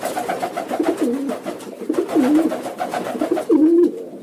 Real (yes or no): yes